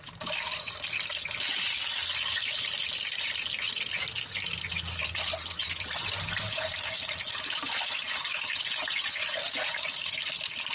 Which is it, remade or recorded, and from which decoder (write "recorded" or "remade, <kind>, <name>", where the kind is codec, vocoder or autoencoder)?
recorded